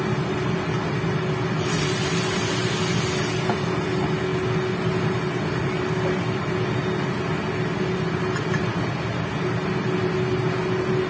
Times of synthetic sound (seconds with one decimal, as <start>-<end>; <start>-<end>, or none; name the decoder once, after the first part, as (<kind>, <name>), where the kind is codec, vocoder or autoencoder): none